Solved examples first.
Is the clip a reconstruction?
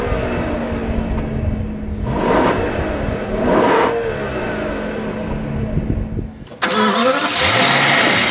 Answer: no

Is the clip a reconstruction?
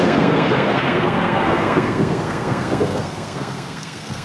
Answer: yes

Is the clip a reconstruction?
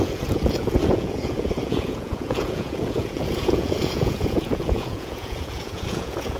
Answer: yes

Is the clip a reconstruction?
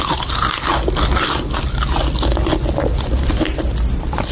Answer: no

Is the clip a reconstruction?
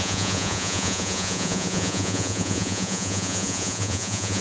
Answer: yes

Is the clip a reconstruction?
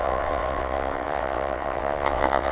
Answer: yes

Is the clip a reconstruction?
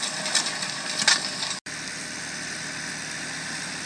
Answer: no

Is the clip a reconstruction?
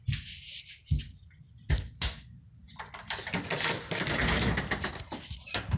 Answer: no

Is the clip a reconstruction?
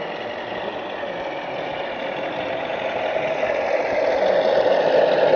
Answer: no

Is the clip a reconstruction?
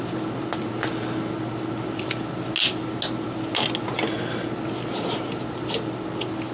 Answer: no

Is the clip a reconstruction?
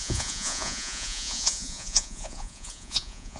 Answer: yes